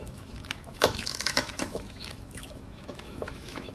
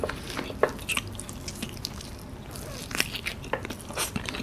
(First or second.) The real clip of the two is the second